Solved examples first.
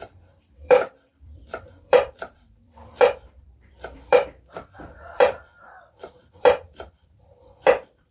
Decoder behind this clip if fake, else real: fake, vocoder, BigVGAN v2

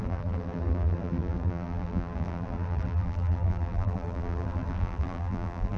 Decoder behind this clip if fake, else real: fake, vocoder, BigVGAN v2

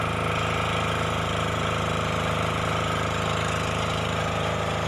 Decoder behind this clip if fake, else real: real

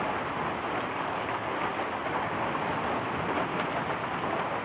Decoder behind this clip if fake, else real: real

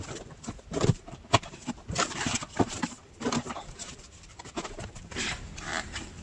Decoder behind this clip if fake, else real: fake, vocoder, BigVGAN v2